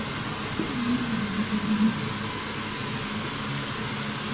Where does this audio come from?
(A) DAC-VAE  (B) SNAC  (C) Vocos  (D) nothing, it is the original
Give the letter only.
D